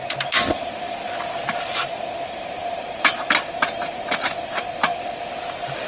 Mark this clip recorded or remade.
recorded